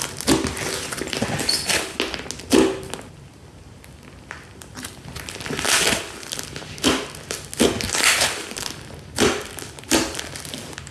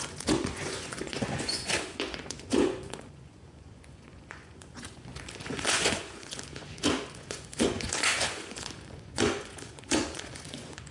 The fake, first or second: second